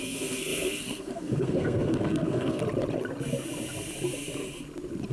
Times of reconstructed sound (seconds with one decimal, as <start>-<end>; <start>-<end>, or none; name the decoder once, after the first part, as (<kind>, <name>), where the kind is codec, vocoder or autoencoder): 0.0-2.6 (codec, SNAC)